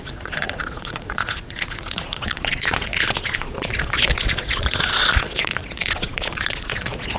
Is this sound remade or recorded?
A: remade